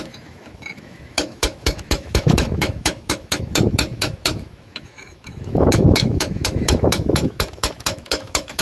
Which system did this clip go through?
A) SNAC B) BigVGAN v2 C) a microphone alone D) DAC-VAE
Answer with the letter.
D